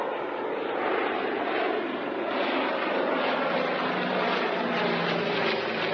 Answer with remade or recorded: remade